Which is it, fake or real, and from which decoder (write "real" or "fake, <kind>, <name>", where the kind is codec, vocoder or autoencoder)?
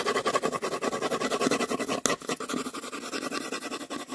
real